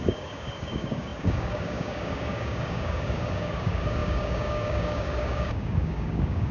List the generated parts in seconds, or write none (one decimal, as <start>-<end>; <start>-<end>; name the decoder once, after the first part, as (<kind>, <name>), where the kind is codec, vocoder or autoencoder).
0.0-6.5 (codec, DAC)